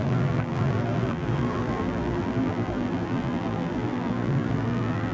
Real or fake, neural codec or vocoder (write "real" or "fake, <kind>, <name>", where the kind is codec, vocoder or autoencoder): fake, vocoder, BigVGAN v2